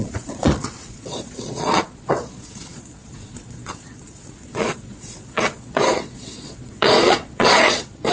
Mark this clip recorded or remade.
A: remade